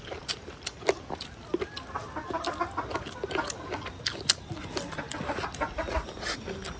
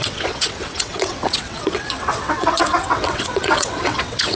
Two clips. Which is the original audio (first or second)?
first